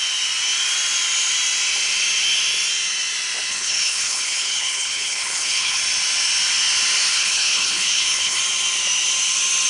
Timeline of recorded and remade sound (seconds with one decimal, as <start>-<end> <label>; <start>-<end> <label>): 0.0-3.5 recorded; 3.5-5.8 remade; 5.8-7.1 recorded; 7.1-8.4 remade; 8.4-9.7 recorded

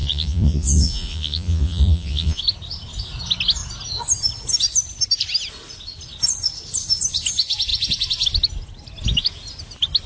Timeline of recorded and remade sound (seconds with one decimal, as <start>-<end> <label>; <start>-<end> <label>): 0.0-2.4 remade; 2.4-10.1 recorded

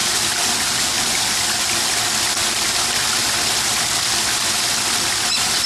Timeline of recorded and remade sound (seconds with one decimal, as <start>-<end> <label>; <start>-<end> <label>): 0.0-5.7 recorded

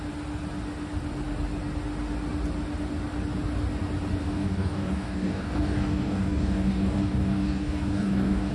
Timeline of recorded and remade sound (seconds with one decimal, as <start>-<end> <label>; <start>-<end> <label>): 0.0-4.2 recorded; 4.2-8.5 remade